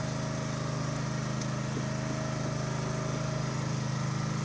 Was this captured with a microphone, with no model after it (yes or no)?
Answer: yes